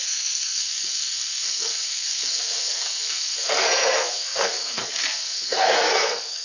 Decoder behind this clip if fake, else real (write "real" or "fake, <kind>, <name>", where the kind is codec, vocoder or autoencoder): fake, codec, SNAC